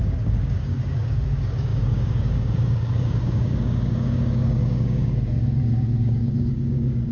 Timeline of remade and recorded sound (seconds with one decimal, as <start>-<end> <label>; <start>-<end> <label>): 0.0-7.1 remade